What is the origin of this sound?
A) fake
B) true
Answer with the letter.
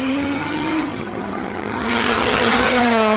A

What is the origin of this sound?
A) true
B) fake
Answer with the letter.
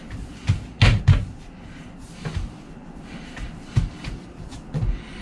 A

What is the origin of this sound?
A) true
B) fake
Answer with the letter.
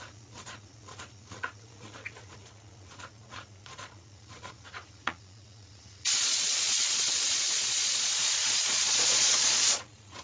B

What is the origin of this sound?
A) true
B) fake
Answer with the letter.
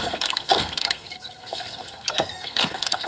B